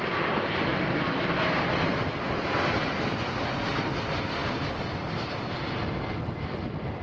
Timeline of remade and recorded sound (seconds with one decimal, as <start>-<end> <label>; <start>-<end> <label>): 0.0-0.7 recorded; 0.7-1.4 remade; 1.4-4.4 recorded; 4.4-5.6 remade; 5.6-7.0 recorded